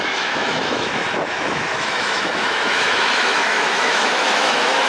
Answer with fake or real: fake